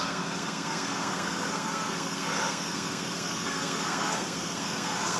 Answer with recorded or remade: remade